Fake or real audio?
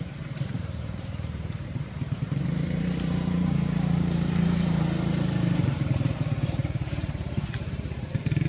fake